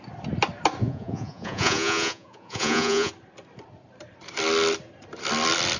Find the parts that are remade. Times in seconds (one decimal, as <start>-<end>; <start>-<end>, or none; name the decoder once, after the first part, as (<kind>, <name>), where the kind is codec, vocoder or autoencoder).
0.8-3.1 (vocoder, Vocos)